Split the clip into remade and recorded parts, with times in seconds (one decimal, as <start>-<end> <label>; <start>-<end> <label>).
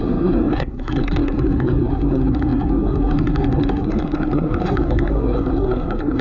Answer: 0.0-6.2 remade